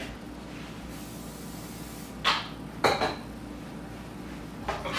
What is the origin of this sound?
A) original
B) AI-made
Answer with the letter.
A